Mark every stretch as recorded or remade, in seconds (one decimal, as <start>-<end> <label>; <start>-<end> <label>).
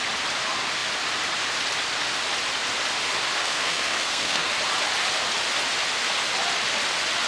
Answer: 0.0-3.4 recorded; 3.4-4.5 remade; 4.5-7.3 recorded